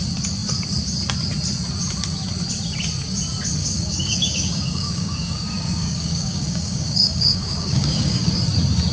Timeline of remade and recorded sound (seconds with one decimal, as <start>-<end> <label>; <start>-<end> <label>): 0.0-3.6 recorded; 3.6-8.3 remade; 8.3-8.9 recorded